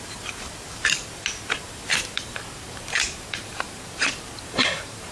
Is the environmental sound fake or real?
fake